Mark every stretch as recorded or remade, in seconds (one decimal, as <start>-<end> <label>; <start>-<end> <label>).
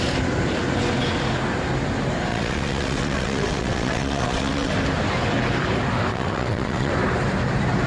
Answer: 0.0-2.3 recorded; 2.3-4.7 remade; 4.7-6.1 recorded; 6.1-6.9 remade; 6.9-7.9 recorded